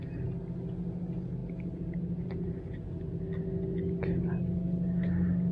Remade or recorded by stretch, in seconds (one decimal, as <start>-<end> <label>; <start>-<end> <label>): 0.0-5.5 recorded